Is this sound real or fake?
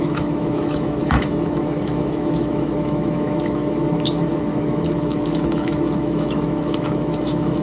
fake